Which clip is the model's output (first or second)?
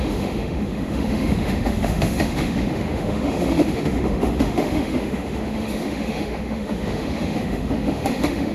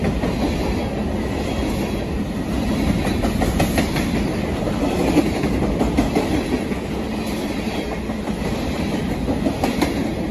first